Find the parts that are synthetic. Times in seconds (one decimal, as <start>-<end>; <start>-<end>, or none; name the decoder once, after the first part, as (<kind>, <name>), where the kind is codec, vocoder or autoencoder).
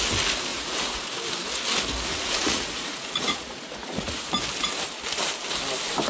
0.5-1.0 (vocoder, Vocos); 2.1-4.3